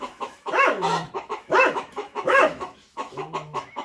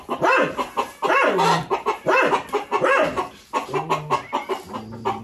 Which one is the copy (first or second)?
first